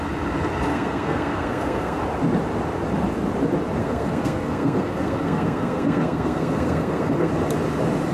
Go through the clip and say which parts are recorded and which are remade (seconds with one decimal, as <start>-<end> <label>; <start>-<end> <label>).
0.0-0.7 recorded; 0.7-2.0 remade; 2.0-3.8 recorded; 3.8-7.3 remade; 7.3-8.1 recorded